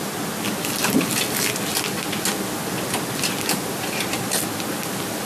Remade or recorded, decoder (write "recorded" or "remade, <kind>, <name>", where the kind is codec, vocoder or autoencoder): recorded